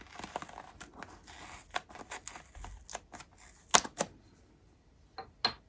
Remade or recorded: recorded